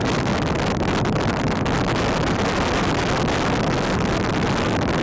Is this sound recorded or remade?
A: recorded